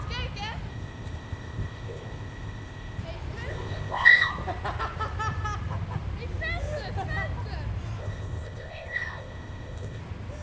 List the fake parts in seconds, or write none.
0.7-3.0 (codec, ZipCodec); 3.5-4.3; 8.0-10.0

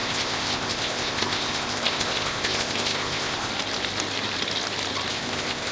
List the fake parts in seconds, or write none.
0.0-3.5 (codec, ZipCodec); 5.1-5.7

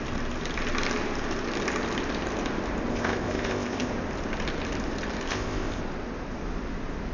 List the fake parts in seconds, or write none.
2.9-3.9 (codec, ZipCodec); 5.3-5.8

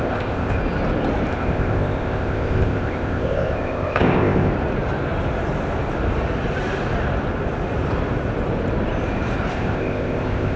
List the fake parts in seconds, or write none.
0.0-0.6 (codec, ZipCodec); 1.3-4.5; 9.5-10.6

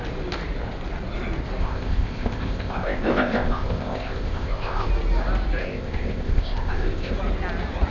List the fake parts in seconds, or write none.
1.6-4.9 (codec, ZipCodec); 5.6-7.1

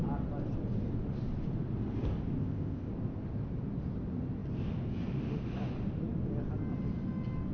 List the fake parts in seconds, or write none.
2.4-2.9 (codec, ZipCodec)